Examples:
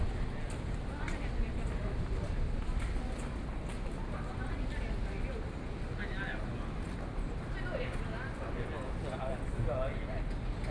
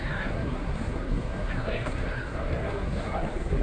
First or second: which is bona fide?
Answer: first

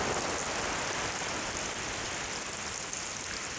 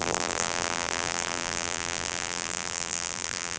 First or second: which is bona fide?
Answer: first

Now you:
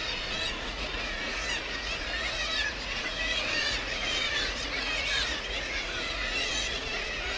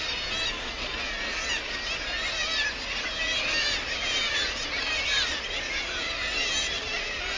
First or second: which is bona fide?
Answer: second